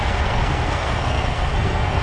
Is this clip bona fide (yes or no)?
no